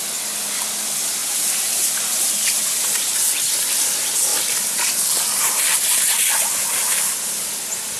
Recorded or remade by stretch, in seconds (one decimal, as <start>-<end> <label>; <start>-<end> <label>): 0.0-1.2 recorded; 1.2-2.5 remade; 2.5-8.0 recorded